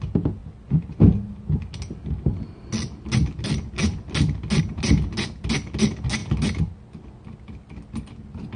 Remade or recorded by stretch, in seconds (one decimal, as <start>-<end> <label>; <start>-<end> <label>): 0.0-8.6 recorded